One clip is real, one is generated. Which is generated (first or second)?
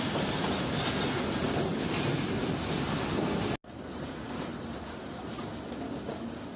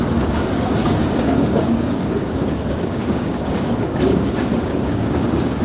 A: second